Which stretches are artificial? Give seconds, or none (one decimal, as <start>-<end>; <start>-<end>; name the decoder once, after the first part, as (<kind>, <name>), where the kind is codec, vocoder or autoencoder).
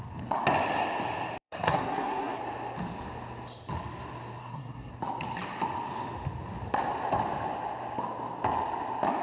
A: 1.4-2.4 (codec, SNAC); 4.4-4.9